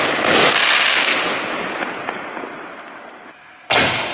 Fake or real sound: real